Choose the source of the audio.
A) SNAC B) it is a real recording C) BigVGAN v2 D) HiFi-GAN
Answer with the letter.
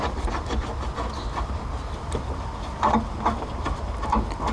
B